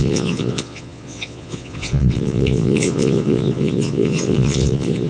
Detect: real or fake fake